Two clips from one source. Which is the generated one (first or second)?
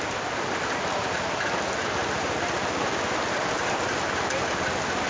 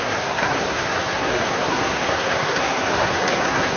second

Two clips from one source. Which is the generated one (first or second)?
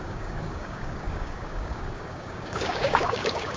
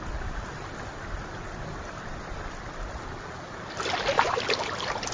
first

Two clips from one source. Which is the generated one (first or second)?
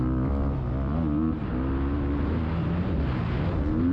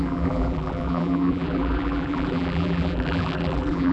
second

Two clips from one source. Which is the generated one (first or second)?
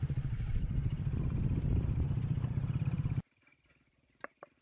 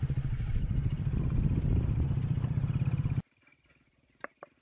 first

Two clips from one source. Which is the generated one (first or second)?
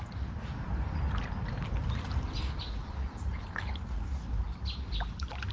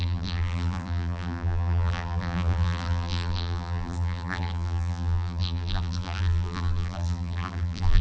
second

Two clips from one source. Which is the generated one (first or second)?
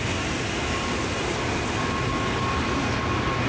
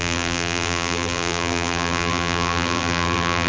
second